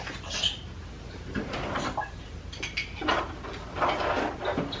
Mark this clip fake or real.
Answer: real